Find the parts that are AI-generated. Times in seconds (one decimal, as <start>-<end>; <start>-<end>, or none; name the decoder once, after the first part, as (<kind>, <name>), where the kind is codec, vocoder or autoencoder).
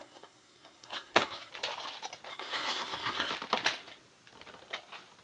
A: 0.0-1.5 (codec, SNAC); 2.3-3.3